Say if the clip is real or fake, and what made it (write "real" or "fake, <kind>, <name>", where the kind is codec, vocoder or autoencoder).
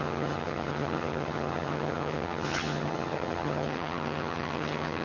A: fake, vocoder, HiFi-GAN